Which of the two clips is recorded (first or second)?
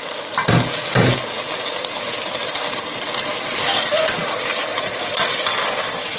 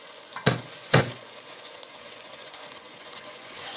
first